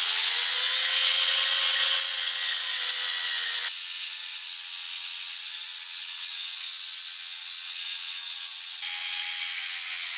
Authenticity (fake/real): fake